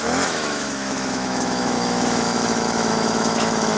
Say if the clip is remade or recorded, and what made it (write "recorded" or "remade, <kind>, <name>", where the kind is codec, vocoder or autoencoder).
remade, autoencoder, DAC-VAE